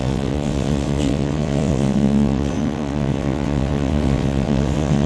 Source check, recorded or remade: remade